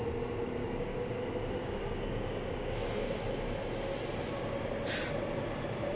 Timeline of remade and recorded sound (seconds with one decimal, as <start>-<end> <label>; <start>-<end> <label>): 0.0-0.6 recorded; 0.6-1.2 remade; 1.2-1.6 recorded; 1.6-3.2 remade; 3.2-6.0 recorded